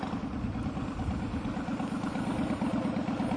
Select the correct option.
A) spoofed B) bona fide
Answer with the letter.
B